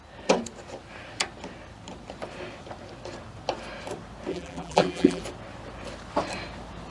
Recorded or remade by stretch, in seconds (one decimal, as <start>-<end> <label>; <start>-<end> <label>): 0.0-4.3 recorded; 4.3-5.2 remade; 5.2-6.9 recorded